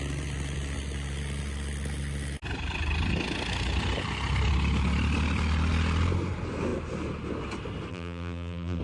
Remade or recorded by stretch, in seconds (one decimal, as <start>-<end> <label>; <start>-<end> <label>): 0.0-7.9 recorded; 7.9-8.8 remade